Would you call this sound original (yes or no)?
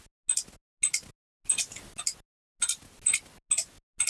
yes